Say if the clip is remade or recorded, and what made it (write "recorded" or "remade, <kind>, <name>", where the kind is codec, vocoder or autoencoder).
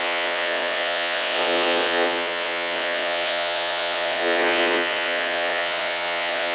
remade, vocoder, WaveNeXt